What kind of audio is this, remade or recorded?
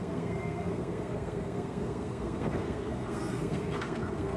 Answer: remade